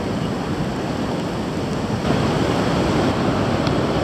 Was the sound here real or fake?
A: real